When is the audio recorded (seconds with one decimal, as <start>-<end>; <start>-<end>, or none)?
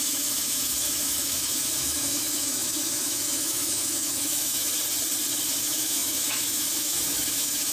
4.7-5.5